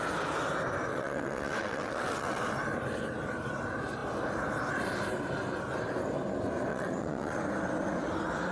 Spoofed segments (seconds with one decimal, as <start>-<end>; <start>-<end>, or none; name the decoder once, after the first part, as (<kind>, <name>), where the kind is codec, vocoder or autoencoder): 0.9-2.4 (vocoder, WaveNeXt); 6.7-7.4